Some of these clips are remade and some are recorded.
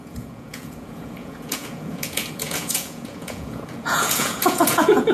remade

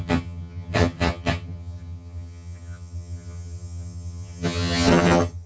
remade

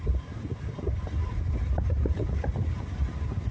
recorded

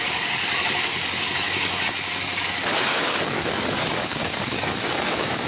remade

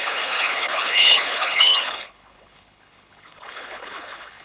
remade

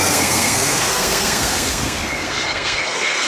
remade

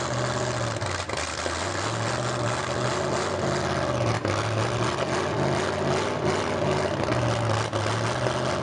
recorded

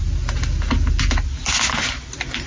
recorded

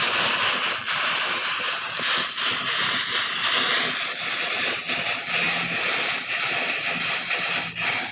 recorded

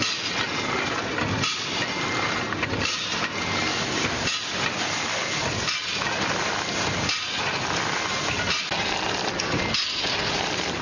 recorded